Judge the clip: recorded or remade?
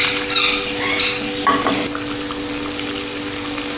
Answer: recorded